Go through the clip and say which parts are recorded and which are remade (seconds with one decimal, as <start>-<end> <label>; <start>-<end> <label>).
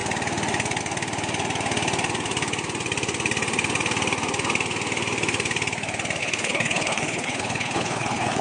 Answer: 0.0-6.2 recorded; 6.2-8.4 remade